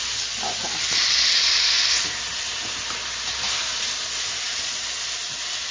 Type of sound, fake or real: real